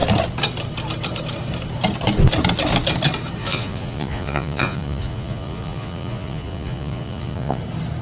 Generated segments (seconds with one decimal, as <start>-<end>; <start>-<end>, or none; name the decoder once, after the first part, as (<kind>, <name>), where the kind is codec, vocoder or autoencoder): 3.4-7.6 (vocoder, Vocos)